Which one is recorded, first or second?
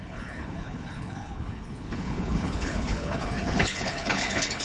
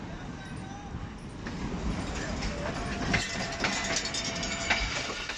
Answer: second